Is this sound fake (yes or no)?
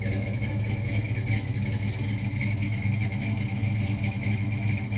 yes